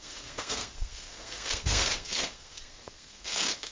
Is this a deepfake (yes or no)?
yes